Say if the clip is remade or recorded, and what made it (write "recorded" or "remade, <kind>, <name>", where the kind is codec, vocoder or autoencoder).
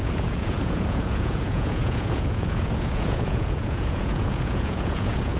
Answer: remade, vocoder, Vocos